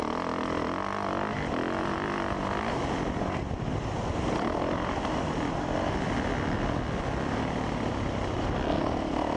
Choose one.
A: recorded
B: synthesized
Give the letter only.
A